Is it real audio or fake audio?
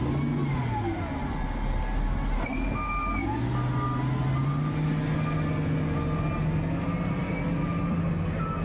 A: real